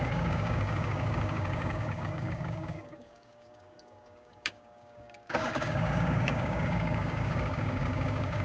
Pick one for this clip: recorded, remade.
remade